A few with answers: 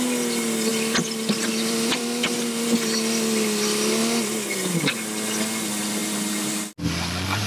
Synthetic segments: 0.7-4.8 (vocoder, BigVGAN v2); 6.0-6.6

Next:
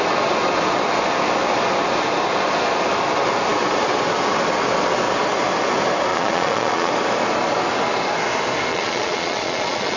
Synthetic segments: 6.1-6.9 (vocoder, Vocos); 8.7-10.0

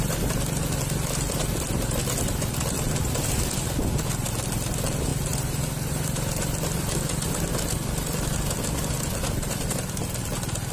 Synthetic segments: none